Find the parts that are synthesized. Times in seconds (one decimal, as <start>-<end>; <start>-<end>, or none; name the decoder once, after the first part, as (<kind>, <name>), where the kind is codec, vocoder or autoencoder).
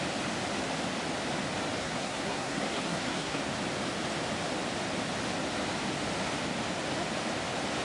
1.8-3.4 (codec, SNAC)